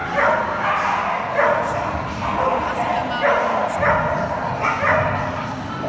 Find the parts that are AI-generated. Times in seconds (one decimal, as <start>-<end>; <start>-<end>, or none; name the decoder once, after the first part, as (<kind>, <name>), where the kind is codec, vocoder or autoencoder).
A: none